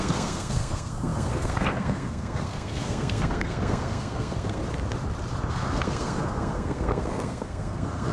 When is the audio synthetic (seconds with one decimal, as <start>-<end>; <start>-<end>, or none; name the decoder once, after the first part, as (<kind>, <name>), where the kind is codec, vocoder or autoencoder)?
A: 0.0-4.6 (codec, SNAC); 5.5-8.1